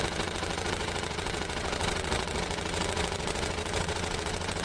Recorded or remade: remade